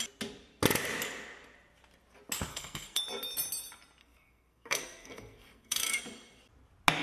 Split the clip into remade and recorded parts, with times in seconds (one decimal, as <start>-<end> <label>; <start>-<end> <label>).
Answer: 0.0-2.5 recorded; 2.5-3.0 remade; 3.0-4.0 recorded; 4.0-6.0 remade; 6.0-7.0 recorded